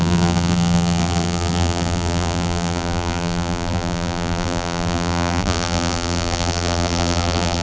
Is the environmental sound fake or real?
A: fake